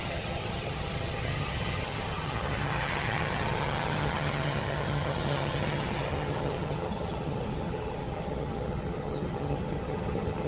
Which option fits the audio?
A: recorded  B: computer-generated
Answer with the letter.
B